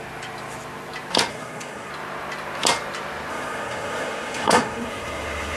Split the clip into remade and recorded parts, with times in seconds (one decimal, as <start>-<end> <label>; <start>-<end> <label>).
0.0-1.3 recorded; 1.3-1.9 remade; 1.9-3.3 recorded; 3.3-5.6 remade